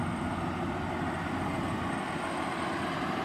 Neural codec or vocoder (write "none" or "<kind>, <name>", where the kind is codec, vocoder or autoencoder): none